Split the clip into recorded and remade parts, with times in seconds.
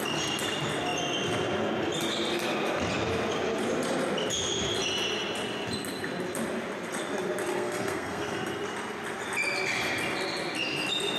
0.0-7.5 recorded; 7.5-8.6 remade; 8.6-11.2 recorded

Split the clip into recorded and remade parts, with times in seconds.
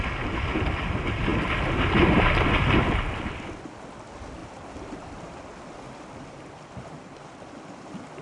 0.0-8.2 recorded